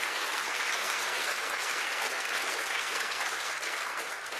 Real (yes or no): no